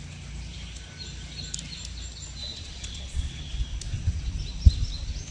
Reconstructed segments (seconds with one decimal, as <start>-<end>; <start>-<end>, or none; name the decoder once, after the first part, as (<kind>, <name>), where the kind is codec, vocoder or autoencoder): 2.4-3.4 (vocoder, Vocos)